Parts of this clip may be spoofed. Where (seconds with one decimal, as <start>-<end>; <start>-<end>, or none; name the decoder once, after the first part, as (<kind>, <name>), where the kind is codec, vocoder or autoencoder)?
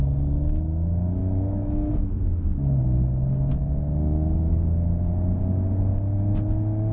none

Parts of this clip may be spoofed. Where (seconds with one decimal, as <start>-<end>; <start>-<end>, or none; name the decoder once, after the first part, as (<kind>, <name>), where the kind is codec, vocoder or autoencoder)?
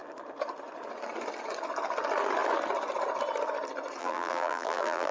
4.0-5.1 (vocoder, BigVGAN v2)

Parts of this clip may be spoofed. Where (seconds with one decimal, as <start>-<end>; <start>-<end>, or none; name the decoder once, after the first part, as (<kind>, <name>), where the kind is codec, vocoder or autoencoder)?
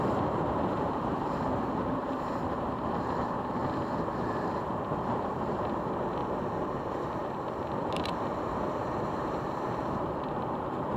0.0-3.6 (vocoder, BigVGAN v2); 5.2-6.2; 6.7-11.0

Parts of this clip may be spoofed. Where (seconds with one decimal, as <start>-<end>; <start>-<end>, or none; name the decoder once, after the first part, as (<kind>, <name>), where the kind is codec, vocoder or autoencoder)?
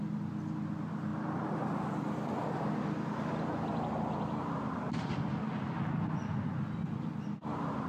none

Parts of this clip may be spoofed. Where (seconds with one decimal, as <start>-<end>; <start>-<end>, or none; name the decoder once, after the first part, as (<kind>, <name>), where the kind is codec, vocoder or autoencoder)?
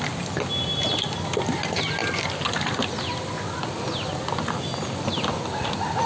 none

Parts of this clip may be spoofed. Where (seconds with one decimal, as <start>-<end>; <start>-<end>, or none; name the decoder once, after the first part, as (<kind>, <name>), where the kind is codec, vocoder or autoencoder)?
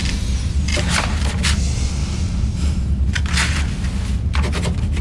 2.0-3.2 (vocoder, BigVGAN v2)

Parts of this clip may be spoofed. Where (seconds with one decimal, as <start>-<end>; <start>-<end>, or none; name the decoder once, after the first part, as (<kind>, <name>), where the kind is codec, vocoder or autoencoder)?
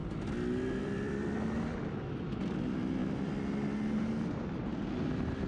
0.8-3.0 (vocoder, BigVGAN v2); 5.1-5.5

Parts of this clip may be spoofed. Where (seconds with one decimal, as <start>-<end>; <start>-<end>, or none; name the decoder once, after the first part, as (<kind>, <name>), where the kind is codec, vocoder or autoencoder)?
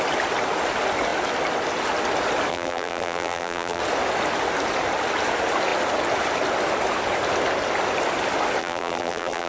2.5-3.8 (vocoder, BigVGAN v2); 8.6-9.5